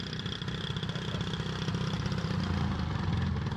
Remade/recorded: recorded